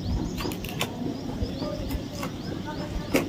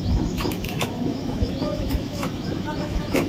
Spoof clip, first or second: second